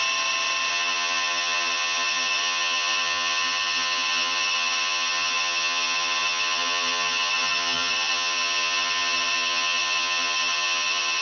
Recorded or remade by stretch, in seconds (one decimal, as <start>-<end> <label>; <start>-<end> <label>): 0.0-0.7 recorded; 0.7-11.2 remade